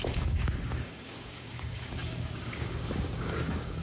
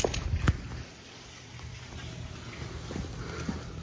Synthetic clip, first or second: first